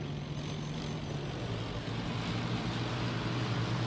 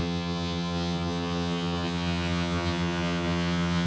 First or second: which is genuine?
first